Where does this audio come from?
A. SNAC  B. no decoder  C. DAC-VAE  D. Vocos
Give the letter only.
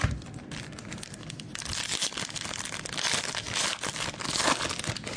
B